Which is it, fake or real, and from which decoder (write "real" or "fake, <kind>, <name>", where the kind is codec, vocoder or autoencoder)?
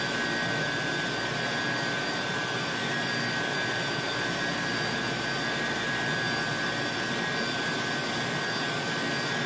real